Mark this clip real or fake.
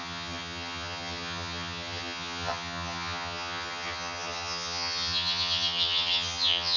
fake